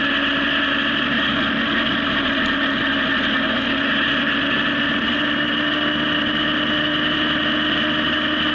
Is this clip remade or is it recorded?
recorded